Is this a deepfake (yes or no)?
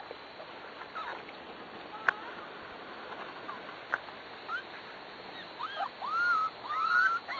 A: no